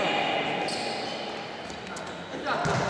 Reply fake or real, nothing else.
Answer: real